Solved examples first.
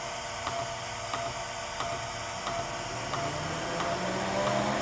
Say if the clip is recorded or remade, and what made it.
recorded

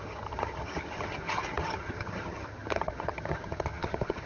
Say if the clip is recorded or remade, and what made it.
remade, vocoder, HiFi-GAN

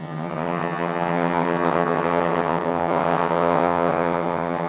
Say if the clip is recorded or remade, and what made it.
remade, vocoder, HiFi-GAN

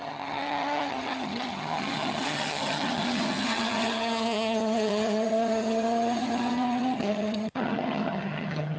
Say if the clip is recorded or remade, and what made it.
remade, vocoder, HiFi-GAN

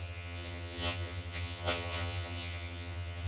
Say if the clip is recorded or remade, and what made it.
remade, vocoder, HiFi-GAN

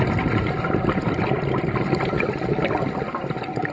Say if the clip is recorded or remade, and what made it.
recorded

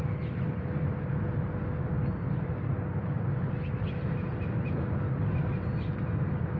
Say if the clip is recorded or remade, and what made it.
recorded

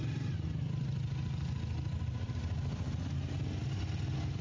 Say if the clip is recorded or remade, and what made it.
recorded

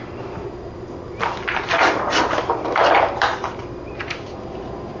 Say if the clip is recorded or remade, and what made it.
recorded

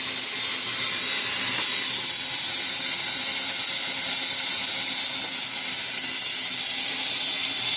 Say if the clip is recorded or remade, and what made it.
recorded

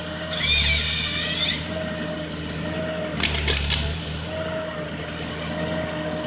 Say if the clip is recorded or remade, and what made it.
recorded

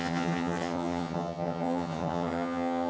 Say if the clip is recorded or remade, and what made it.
remade, vocoder, HiFi-GAN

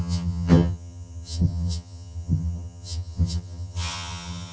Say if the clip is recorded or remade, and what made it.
remade, vocoder, HiFi-GAN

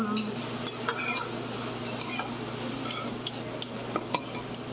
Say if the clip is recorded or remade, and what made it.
recorded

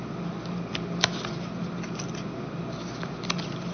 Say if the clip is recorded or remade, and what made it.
recorded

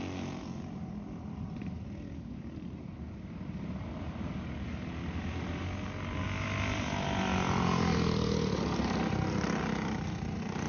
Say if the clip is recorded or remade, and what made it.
recorded